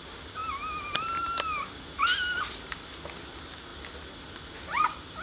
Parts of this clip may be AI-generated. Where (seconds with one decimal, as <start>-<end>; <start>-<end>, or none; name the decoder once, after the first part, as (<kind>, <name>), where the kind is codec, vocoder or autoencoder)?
none